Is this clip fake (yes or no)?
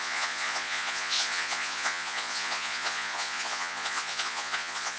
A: yes